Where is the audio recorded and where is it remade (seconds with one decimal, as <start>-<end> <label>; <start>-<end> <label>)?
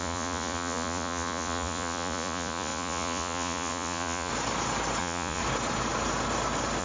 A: 0.0-4.3 remade; 4.3-5.0 recorded; 5.0-5.4 remade; 5.4-6.8 recorded